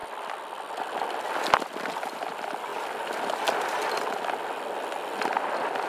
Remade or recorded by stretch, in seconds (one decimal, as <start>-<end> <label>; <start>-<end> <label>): 0.0-2.2 recorded; 2.2-2.7 remade; 2.7-5.0 recorded; 5.0-5.9 remade